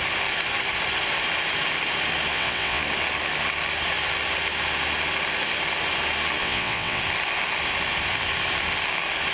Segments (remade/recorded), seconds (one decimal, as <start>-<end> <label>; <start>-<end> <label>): 0.0-2.3 recorded; 2.3-2.8 remade; 2.8-6.4 recorded; 6.4-7.0 remade; 7.0-9.3 recorded